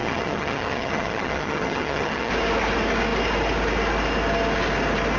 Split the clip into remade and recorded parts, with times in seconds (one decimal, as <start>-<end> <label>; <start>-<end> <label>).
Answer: 0.0-2.3 remade; 2.3-5.2 recorded